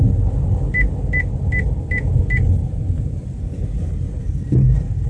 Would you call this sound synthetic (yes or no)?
no